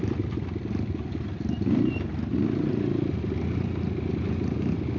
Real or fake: real